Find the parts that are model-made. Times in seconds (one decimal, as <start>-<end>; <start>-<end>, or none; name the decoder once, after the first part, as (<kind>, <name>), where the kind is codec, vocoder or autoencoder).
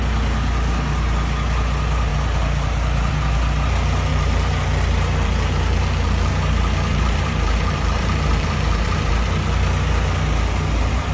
2.1-3.1 (vocoder, BigVGAN v2); 4.1-6.3; 6.9-9.1